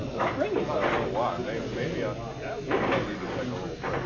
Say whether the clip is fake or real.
real